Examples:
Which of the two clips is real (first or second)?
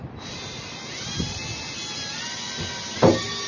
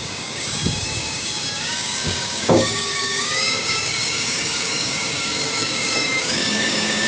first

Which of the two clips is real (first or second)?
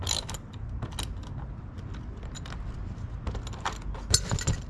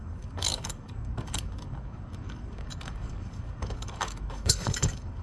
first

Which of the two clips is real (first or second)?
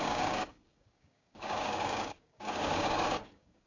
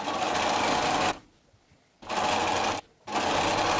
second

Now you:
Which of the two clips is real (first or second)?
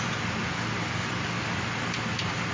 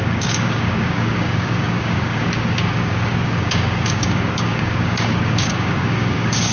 first